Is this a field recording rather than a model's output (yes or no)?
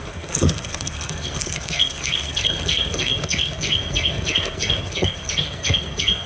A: no